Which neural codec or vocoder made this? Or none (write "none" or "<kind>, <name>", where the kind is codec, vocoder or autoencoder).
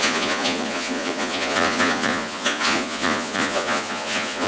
vocoder, Vocos